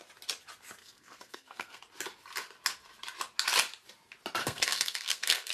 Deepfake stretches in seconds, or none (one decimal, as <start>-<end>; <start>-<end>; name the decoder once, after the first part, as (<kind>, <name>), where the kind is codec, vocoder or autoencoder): 0.8-1.8 (codec, SNAC); 4.4-5.5